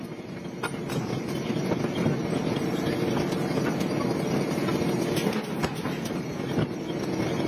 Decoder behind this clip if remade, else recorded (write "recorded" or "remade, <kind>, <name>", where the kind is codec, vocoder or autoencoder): recorded